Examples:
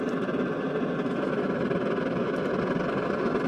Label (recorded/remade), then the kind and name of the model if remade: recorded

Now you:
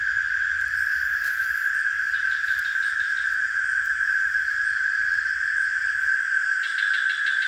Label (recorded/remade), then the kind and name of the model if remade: recorded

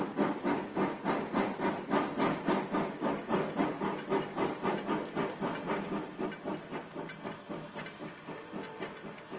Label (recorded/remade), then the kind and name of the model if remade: recorded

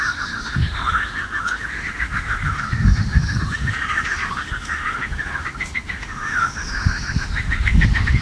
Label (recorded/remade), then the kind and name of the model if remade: remade, autoencoder, DAC-VAE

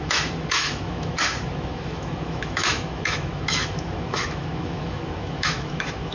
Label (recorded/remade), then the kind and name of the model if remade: remade, autoencoder, DAC-VAE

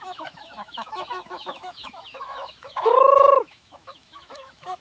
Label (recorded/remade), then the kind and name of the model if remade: remade, autoencoder, DAC-VAE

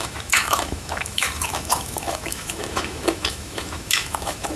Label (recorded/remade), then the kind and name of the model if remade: remade, autoencoder, DAC-VAE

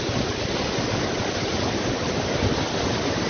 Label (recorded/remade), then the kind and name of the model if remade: recorded